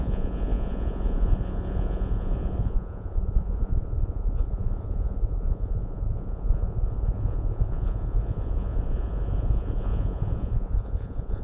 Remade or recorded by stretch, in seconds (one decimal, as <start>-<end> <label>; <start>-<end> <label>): 0.0-11.4 remade